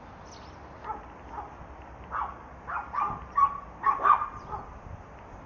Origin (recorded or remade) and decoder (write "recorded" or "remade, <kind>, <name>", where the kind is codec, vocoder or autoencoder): recorded